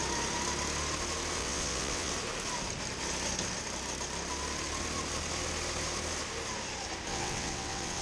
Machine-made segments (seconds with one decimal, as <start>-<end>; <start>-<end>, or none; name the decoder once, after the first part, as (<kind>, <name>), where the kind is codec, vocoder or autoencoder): 1.4-2.1 (vocoder, WaveNeXt); 7.1-8.0